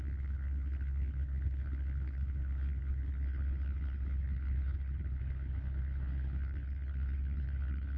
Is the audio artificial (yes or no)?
yes